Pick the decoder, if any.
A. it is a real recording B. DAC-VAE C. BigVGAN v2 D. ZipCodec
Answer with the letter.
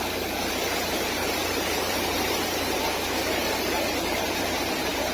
C